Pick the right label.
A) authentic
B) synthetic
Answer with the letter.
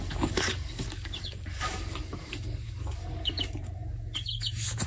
B